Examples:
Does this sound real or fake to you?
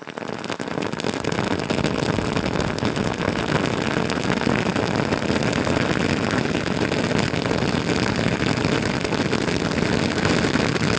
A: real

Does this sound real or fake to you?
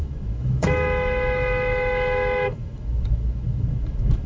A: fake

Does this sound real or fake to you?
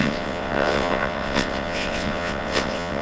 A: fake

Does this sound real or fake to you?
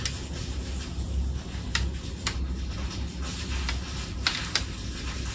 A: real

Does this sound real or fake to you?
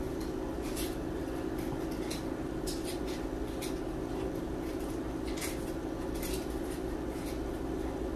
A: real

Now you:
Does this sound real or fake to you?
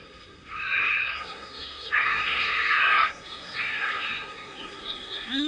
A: fake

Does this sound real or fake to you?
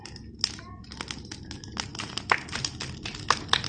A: real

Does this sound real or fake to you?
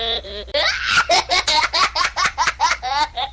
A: fake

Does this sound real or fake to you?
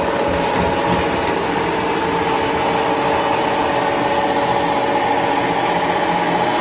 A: real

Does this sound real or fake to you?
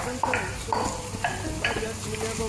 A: real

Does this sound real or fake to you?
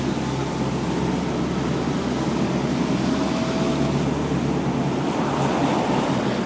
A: real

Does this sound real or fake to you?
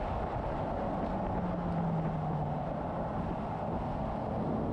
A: real